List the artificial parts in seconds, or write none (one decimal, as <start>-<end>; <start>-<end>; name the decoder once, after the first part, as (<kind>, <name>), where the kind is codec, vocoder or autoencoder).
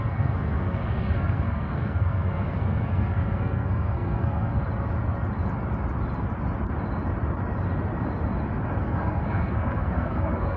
0.0-4.6 (codec, SNAC); 8.8-10.6